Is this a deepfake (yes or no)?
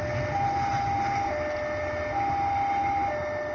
no